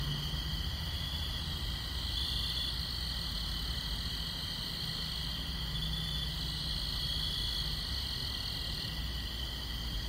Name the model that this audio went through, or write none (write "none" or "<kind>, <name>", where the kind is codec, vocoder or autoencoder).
none